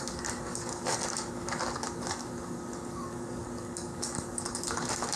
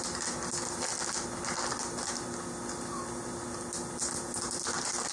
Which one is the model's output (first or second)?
first